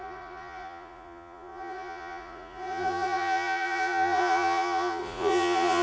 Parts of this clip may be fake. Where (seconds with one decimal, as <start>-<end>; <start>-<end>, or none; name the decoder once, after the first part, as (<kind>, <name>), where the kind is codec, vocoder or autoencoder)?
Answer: 0.0-5.8 (vocoder, Vocos)